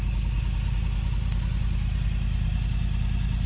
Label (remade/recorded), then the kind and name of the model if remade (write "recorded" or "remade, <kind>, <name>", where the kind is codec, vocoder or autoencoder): recorded